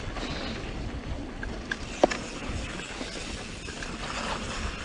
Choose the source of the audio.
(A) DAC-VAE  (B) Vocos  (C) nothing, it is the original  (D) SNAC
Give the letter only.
C